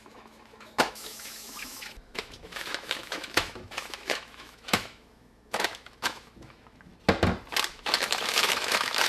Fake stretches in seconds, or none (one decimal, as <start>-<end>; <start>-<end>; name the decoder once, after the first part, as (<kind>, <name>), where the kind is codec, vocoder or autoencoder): 0.0-6.9 (autoencoder, DAC-VAE); 7.7-9.1